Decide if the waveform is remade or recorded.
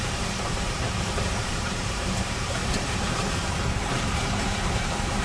remade